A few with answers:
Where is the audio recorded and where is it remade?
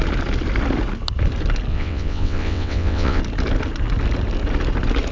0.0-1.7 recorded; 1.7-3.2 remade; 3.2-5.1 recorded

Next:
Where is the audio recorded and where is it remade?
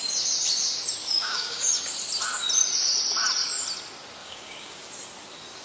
0.0-1.0 recorded; 1.0-1.7 remade; 1.7-4.2 recorded; 4.2-4.9 remade; 4.9-5.6 recorded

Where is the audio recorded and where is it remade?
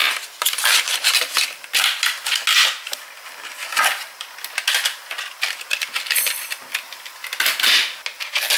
0.0-8.6 recorded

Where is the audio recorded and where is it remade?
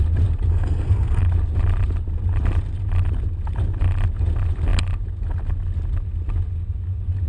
0.0-0.5 recorded; 0.5-1.2 remade; 1.2-7.3 recorded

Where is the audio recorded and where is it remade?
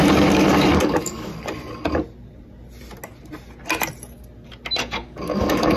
0.0-1.3 remade; 1.3-4.8 recorded; 4.8-5.8 remade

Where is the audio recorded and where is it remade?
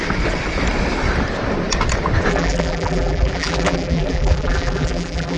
0.0-2.3 recorded; 2.3-5.4 remade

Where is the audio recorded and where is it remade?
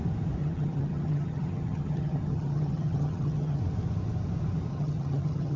0.0-0.4 recorded; 0.4-3.6 remade; 3.6-4.7 recorded; 4.7-5.6 remade